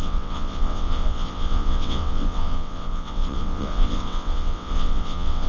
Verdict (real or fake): fake